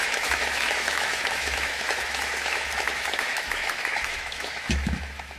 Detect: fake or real fake